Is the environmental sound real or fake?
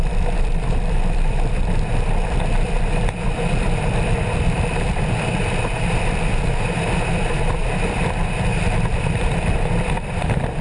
fake